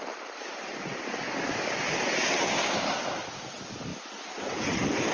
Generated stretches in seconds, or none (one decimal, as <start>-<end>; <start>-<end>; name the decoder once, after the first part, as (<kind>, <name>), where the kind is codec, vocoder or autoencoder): none